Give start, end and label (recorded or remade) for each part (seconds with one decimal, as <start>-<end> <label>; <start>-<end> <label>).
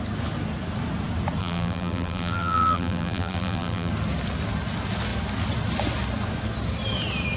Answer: 0.0-1.4 recorded; 1.4-3.9 remade; 3.9-7.4 recorded